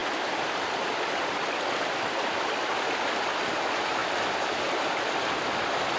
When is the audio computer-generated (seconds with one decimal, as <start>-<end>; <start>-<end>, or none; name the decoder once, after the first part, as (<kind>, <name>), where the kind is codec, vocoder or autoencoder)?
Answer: 0.0-2.7 (vocoder, BigVGAN v2)